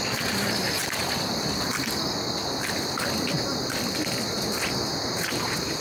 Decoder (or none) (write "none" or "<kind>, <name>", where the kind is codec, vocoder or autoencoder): none